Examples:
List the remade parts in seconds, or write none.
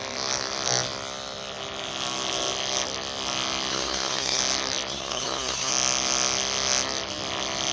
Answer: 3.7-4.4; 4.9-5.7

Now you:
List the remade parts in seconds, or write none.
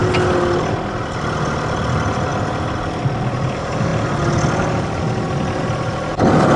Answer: none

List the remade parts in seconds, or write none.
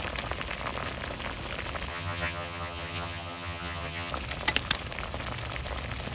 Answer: 1.9-4.1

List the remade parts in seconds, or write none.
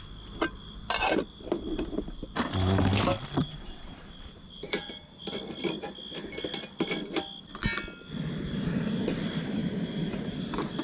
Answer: 3.4-5.2; 9.6-10.4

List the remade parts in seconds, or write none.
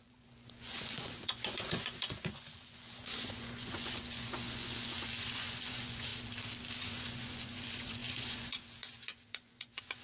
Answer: 0.0-6.1; 6.8-10.0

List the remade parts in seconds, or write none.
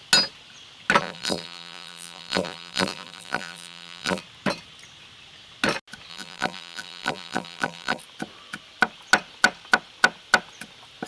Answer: 1.0-4.2; 6.1-8.0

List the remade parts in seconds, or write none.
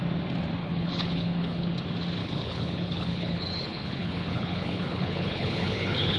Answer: 0.6-1.7; 2.2-6.2